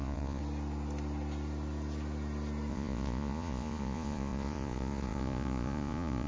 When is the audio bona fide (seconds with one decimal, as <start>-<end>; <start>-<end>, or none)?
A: 0.4-2.7